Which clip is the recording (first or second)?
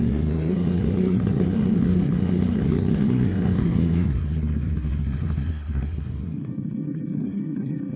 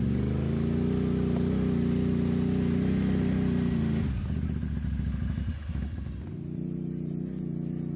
second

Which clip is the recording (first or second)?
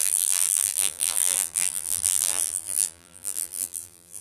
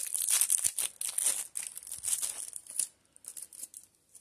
second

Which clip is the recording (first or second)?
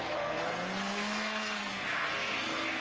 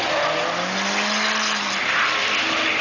second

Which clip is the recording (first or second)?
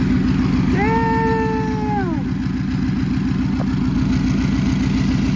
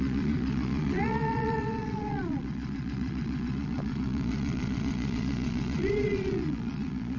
first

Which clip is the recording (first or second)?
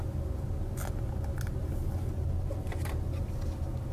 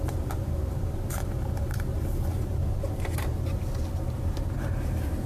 first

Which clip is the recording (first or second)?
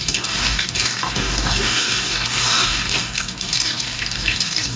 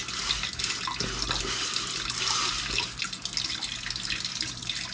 second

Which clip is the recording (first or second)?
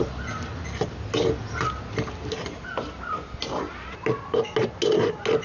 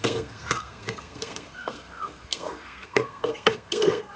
first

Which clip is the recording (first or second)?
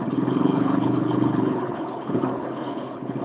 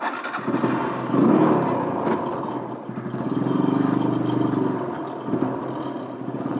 second